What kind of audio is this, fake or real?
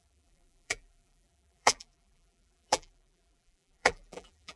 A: fake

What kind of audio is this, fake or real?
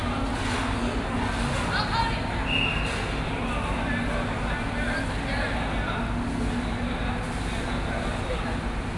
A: real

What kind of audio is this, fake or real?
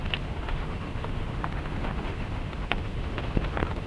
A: fake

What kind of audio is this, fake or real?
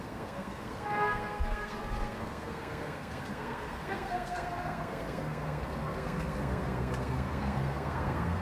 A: fake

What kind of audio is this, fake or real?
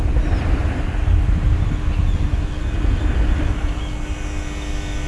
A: real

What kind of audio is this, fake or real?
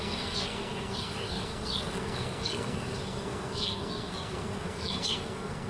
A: fake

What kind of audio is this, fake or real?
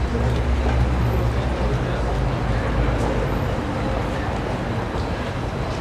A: real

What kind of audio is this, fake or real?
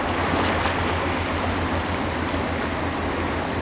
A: real